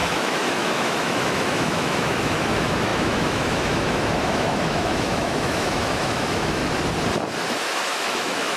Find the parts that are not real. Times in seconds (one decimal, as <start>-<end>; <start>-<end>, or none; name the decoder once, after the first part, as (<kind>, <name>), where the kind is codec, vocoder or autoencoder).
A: 0.0-6.6 (autoencoder, DAC-VAE); 7.5-8.6